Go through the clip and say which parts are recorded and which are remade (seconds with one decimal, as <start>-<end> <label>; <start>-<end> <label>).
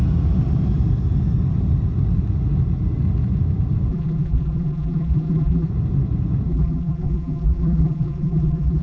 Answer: 0.0-3.9 recorded; 3.9-5.7 remade; 5.7-6.5 recorded; 6.5-8.8 remade